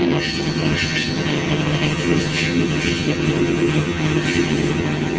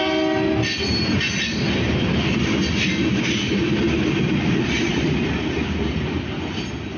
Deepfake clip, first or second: first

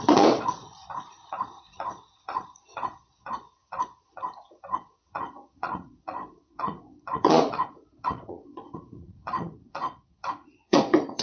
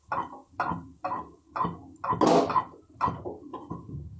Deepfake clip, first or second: first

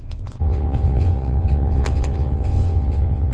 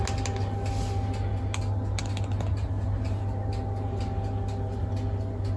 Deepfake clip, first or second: first